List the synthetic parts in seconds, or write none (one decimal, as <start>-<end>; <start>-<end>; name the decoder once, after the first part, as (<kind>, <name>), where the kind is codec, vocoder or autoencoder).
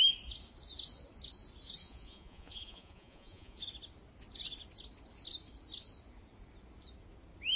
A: 1.8-3.6 (vocoder, Vocos)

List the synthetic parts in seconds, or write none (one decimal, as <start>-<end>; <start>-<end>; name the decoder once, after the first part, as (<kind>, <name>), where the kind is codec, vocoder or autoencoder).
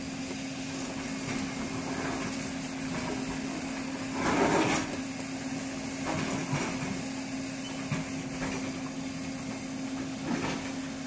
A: none